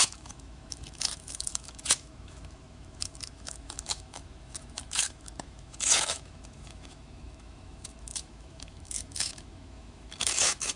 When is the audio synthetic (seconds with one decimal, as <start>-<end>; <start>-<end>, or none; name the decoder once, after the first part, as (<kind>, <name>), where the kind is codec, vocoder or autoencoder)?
0.0-10.8 (autoencoder, DAC-VAE)